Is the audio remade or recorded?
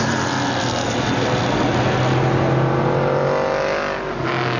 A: recorded